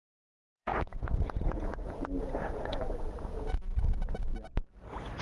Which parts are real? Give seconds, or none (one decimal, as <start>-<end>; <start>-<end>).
4.3-5.2